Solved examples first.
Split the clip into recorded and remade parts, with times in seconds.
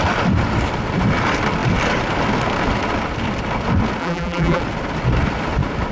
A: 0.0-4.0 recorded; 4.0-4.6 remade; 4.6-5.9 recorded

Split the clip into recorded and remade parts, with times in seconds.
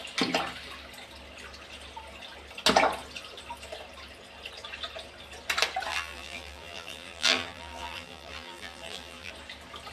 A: 0.0-5.9 recorded; 5.9-9.3 remade; 9.3-9.9 recorded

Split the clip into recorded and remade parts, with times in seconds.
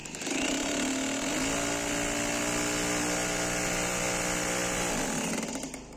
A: 0.0-0.9 remade; 0.9-6.0 recorded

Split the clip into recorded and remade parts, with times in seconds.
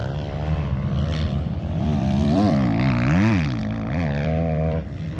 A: 0.0-2.5 remade; 2.5-3.6 recorded; 3.6-5.2 remade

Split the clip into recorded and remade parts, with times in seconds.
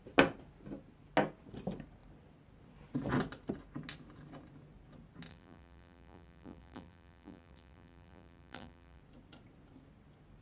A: 0.0-5.3 recorded; 5.3-9.0 remade; 9.0-10.4 recorded